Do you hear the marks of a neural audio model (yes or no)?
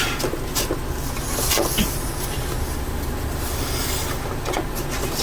no